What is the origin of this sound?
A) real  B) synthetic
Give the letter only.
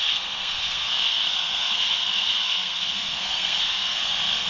B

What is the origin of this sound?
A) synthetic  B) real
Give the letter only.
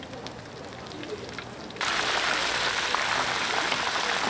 B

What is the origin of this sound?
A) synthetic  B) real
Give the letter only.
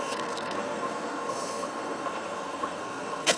A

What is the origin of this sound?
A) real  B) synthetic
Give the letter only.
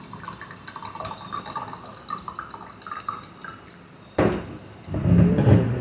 A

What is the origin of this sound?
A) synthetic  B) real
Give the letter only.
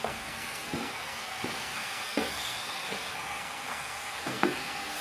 A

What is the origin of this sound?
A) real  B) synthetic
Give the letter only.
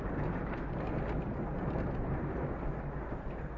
A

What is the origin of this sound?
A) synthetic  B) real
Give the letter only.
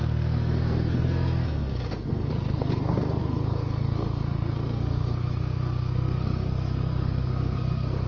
A